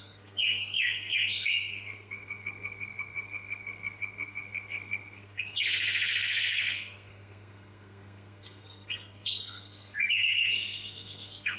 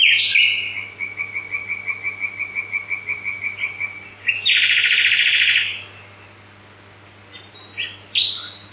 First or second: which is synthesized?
first